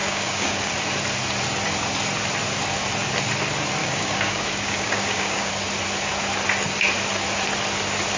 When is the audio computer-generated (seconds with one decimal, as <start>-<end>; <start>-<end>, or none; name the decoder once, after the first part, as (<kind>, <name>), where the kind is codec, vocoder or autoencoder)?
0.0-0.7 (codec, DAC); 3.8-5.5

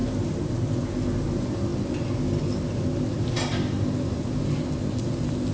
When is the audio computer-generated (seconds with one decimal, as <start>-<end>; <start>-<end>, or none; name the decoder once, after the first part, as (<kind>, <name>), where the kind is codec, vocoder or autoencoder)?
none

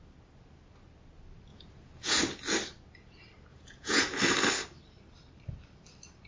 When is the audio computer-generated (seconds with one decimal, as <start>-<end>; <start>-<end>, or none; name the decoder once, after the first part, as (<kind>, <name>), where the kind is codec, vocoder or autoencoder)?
1.5-2.2 (vocoder, Vocos); 3.5-4.2

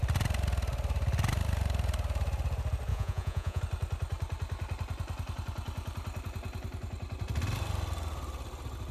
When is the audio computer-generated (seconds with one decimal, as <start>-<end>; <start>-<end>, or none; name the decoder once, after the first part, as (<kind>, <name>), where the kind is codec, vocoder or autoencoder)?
2.9-3.6 (vocoder, Vocos)

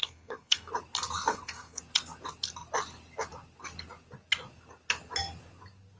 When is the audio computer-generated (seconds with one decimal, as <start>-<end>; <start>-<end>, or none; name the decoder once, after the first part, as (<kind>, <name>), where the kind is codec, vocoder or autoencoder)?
0.0-0.7 (codec, SNAC); 1.3-1.8

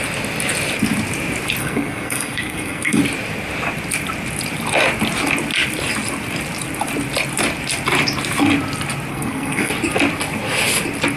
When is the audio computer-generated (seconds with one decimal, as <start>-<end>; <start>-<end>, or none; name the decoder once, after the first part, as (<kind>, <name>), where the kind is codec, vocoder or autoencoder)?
1.6-3.0 (codec, SNAC); 9.1-9.7